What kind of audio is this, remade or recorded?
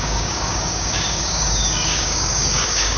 remade